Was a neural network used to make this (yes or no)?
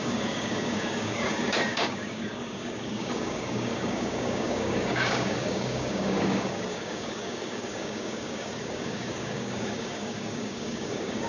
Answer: yes